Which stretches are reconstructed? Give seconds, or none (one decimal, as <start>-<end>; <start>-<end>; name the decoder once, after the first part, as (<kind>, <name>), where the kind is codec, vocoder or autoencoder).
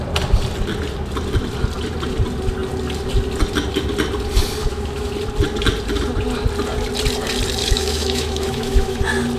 4.6-5.1 (autoencoder, DAC-VAE); 7.6-9.0